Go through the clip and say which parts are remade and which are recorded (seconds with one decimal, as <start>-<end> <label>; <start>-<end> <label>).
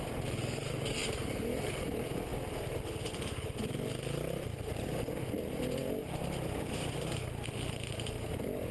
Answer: 0.0-8.7 recorded